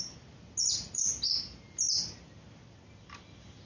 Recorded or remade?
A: recorded